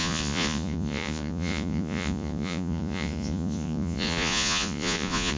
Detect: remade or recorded remade